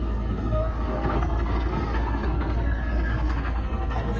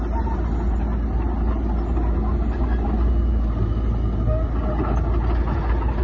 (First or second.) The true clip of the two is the second